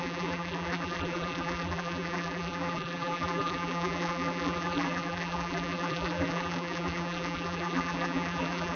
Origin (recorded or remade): remade